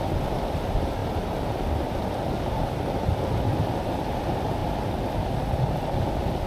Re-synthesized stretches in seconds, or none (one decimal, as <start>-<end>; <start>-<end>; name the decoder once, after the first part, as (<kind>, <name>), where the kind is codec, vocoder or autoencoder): none